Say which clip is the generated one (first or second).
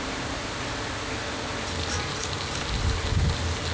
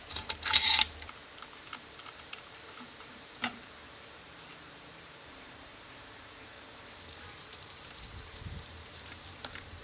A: second